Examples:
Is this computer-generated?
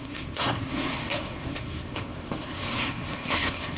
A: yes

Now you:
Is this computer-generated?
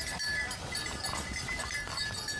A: no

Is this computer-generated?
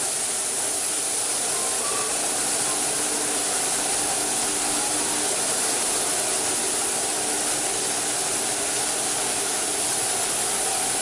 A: no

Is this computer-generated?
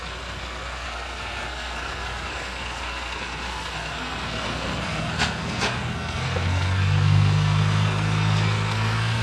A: yes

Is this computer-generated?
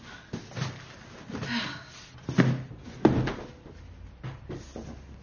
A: no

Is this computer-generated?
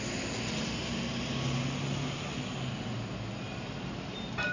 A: no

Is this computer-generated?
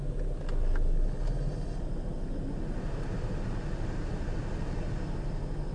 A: no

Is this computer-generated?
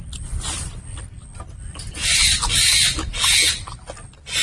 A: no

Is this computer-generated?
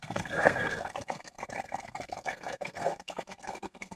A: yes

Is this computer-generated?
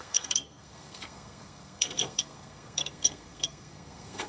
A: yes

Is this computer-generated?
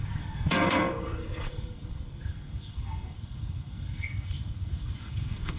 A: yes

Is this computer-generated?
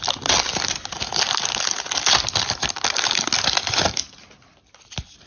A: no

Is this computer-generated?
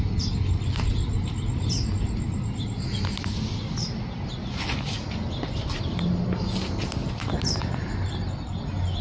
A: no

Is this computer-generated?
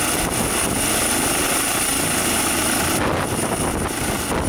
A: no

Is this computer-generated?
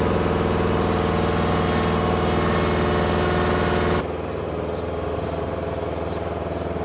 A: no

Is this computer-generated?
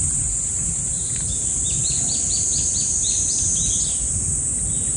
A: no